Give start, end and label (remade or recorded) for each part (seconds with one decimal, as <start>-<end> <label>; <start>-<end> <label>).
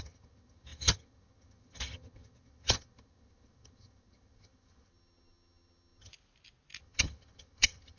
0.0-6.1 remade; 6.1-6.8 recorded; 6.8-8.0 remade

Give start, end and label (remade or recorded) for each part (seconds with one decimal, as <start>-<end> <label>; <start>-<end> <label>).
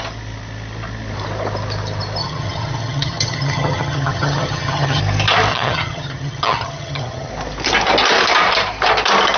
0.0-2.2 recorded; 2.2-5.0 remade; 5.0-5.5 recorded; 5.5-7.3 remade; 7.3-9.4 recorded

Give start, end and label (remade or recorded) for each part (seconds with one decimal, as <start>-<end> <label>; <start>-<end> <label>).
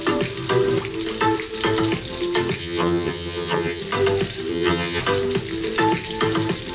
0.0-2.6 recorded; 2.6-3.8 remade; 3.8-4.5 recorded; 4.5-5.0 remade; 5.0-6.7 recorded